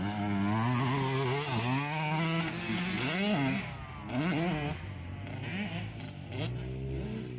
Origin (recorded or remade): recorded